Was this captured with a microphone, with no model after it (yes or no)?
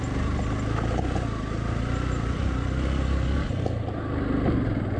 yes